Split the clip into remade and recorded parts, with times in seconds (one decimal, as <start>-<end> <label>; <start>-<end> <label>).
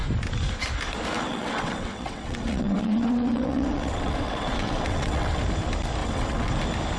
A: 0.0-1.3 recorded; 1.3-5.4 remade; 5.4-6.0 recorded; 6.0-6.5 remade; 6.5-7.0 recorded